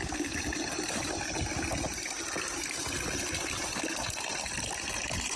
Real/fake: real